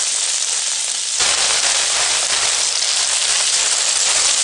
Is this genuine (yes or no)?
yes